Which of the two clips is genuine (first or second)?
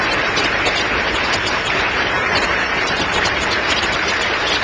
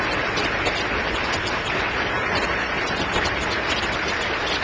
second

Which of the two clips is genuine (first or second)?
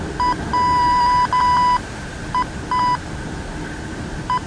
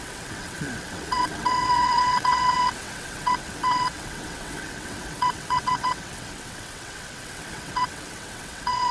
first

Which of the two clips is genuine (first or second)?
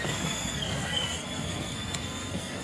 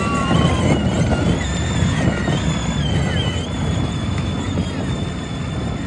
second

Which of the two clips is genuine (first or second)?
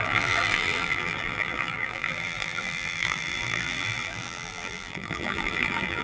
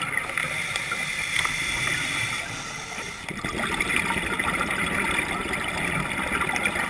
second